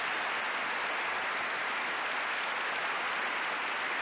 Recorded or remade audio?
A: recorded